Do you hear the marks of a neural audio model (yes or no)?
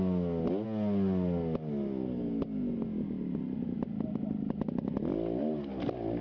no